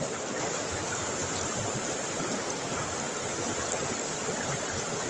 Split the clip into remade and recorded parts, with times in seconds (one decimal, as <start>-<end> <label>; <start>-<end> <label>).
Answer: 0.0-5.1 recorded